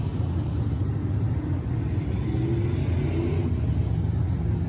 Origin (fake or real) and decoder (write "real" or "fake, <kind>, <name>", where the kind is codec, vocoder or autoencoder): real